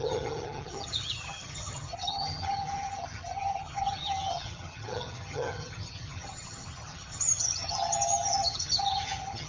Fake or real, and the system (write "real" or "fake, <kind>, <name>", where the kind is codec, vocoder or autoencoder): fake, vocoder, HiFi-GAN